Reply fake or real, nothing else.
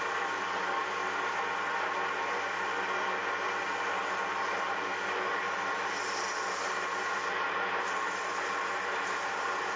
real